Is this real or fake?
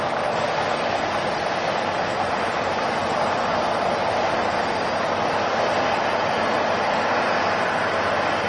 real